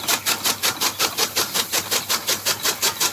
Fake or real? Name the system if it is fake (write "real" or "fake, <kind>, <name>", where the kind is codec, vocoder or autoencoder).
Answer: real